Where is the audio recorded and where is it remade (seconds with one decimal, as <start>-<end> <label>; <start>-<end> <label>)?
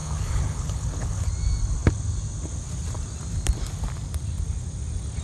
0.0-1.3 remade; 1.3-5.2 recorded